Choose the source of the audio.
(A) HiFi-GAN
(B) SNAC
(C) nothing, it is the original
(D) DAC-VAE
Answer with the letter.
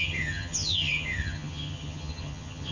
A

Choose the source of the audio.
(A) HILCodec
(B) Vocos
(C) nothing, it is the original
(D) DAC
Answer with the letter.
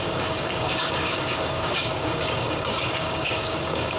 D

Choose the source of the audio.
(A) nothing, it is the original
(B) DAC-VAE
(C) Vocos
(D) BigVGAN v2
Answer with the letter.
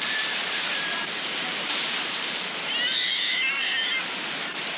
D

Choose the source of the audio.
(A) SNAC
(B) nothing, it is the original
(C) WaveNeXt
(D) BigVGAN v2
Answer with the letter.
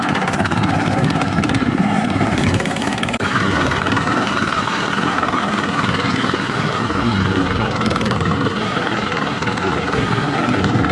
A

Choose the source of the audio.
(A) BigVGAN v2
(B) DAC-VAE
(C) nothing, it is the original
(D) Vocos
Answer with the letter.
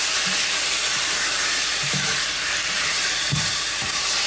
A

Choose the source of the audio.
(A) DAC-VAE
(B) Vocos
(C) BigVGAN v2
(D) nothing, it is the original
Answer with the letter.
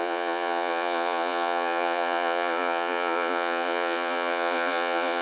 B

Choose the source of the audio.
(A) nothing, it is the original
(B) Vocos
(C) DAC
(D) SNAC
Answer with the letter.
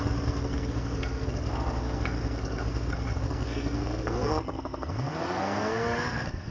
D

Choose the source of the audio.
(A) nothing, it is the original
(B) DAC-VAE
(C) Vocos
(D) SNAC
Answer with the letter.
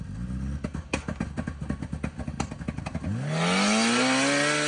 A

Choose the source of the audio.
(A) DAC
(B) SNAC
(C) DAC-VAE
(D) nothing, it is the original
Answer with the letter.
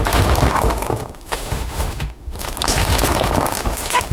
C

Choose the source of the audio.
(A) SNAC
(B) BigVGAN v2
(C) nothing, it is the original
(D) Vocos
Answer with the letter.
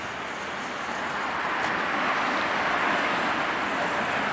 C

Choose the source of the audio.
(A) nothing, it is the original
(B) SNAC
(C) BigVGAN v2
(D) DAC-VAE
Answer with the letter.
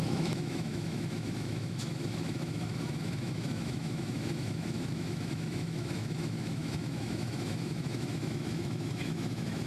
D